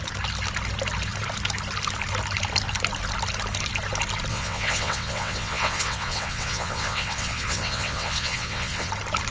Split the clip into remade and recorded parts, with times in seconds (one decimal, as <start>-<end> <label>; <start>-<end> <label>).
0.0-4.3 recorded; 4.3-8.9 remade; 8.9-9.3 recorded